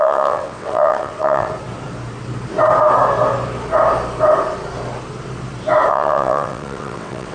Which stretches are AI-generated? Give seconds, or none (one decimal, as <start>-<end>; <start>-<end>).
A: 0.0-1.5; 5.9-7.3